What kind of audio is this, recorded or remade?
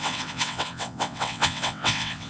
remade